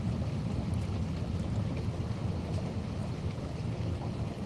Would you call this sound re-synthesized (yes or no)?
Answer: yes